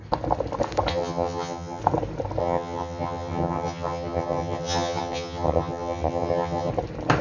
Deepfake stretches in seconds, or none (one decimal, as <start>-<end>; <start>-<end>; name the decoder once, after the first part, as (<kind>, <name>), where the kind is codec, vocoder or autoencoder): 0.9-1.8 (vocoder, HiFi-GAN); 2.4-6.7